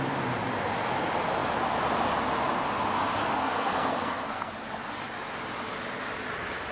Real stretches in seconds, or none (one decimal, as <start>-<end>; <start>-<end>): 0.0-3.2; 4.5-6.7